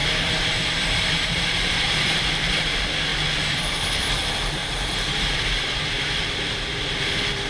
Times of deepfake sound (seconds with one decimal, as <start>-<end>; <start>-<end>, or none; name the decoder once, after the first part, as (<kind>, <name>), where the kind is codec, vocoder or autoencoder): 0.0-2.7 (vocoder, BigVGAN v2); 4.6-6.1